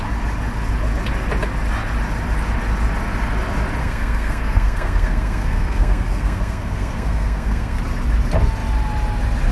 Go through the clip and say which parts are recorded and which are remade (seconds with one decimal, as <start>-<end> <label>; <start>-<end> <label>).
0.0-3.8 recorded; 3.8-7.8 remade; 7.8-9.5 recorded